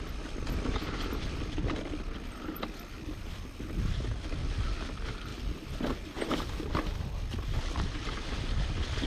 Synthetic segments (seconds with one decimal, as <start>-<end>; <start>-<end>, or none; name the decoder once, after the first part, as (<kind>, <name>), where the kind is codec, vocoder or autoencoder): none